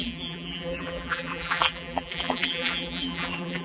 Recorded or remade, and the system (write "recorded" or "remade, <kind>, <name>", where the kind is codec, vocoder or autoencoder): remade, vocoder, BigVGAN v2